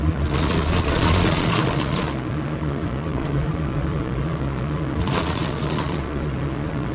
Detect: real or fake fake